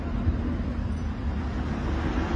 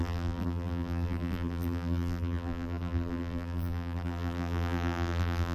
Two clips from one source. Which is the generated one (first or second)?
second